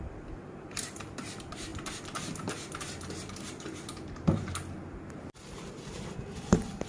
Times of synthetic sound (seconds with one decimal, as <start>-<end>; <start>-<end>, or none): none